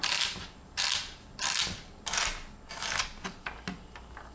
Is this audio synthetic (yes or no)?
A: no